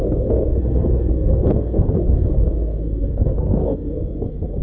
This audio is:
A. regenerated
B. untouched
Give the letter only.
A